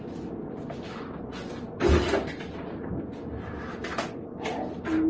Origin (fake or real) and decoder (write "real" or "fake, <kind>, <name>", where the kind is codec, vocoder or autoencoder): real